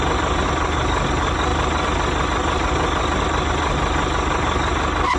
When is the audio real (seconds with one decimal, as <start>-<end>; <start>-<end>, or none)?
0.0-5.2